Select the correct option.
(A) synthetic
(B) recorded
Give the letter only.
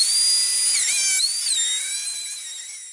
B